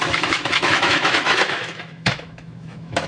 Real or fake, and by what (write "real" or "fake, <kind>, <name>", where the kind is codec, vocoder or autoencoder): fake, autoencoder, DAC-VAE